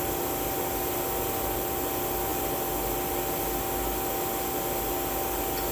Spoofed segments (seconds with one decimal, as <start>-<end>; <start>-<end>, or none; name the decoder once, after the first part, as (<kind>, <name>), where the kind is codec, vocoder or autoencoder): none